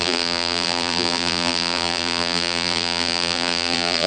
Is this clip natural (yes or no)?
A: no